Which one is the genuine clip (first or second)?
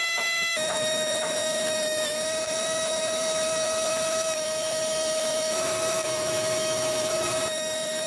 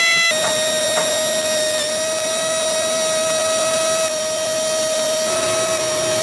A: second